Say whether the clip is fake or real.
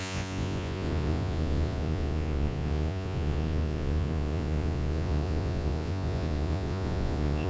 fake